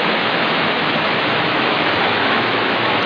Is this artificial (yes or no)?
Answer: yes